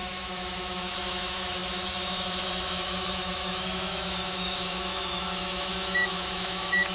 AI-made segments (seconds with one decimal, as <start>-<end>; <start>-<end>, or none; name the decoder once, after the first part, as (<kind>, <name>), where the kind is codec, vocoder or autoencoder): 0.0-6.9 (autoencoder, DAC-VAE)